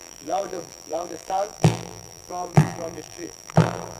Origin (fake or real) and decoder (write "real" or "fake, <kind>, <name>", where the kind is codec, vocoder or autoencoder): fake, vocoder, BigVGAN v2